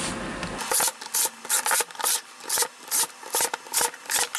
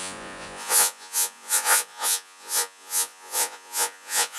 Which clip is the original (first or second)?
first